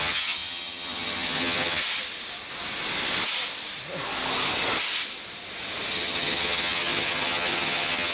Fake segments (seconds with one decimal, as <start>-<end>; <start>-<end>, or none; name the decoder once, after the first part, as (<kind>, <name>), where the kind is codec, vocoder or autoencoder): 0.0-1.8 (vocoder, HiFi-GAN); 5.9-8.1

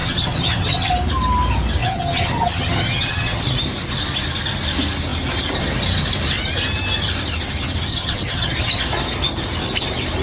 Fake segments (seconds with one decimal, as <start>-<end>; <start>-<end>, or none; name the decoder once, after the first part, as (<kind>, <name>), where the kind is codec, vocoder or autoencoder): 0.0-0.9 (vocoder, HiFi-GAN); 1.8-3.4; 7.9-8.8

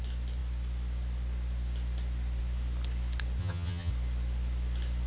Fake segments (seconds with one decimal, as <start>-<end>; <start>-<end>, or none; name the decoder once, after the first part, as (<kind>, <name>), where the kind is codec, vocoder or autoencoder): 3.4-3.9 (vocoder, HiFi-GAN)

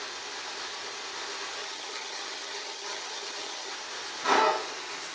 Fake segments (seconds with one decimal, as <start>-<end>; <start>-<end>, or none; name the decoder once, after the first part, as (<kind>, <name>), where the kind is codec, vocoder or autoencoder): 1.6-3.7 (vocoder, HiFi-GAN)

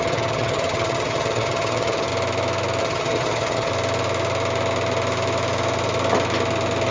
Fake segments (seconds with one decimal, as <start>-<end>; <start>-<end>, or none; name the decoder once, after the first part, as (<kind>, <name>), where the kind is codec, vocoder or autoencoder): 0.0-2.1 (vocoder, HiFi-GAN); 2.8-3.7

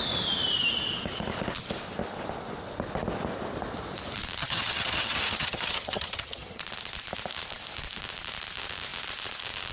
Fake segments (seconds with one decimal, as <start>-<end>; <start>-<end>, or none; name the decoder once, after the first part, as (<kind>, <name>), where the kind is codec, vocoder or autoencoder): 4.4-6.6 (vocoder, HiFi-GAN)

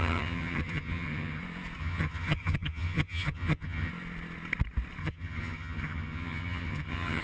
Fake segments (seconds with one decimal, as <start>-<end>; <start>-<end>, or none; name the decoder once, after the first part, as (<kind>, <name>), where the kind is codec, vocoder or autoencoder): 0.0-1.4 (vocoder, HiFi-GAN); 1.8-3.9; 5.0-7.2

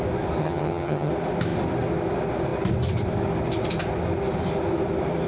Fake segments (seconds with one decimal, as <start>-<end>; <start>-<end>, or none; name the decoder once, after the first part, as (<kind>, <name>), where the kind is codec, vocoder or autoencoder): 0.4-1.1 (vocoder, HiFi-GAN)